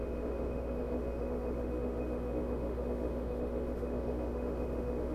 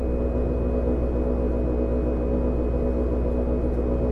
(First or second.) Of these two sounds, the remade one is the first